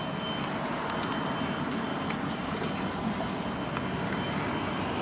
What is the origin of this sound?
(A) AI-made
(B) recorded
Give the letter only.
B